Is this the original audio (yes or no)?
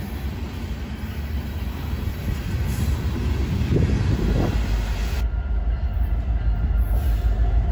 yes